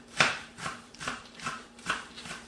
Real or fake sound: fake